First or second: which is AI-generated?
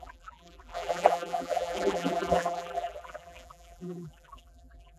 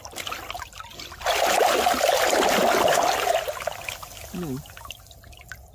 first